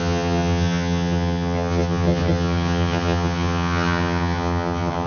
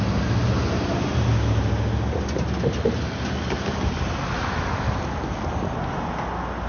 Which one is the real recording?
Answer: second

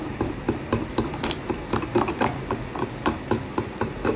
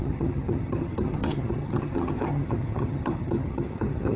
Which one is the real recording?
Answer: first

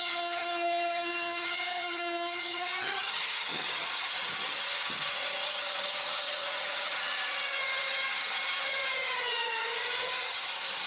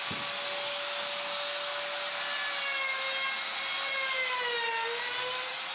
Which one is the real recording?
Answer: second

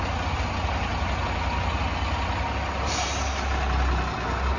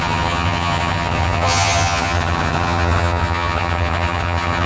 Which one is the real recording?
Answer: first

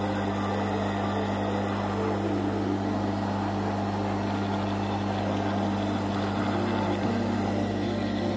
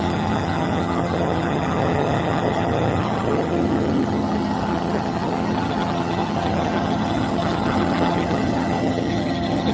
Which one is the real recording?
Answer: first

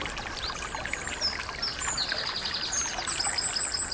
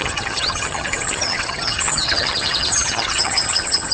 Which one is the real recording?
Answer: first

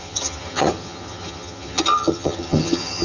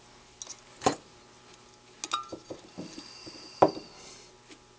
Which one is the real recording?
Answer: second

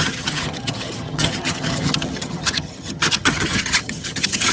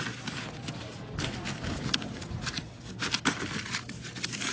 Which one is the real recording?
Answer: second